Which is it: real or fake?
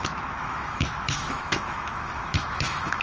fake